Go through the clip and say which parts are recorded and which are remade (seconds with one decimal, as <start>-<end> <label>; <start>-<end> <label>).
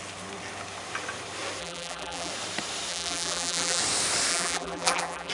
0.0-1.6 recorded; 1.6-2.3 remade; 2.3-2.9 recorded; 2.9-3.8 remade; 3.8-4.3 recorded; 4.3-5.3 remade